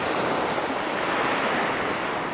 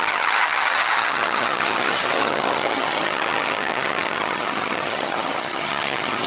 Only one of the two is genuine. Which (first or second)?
first